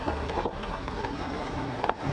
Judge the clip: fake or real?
fake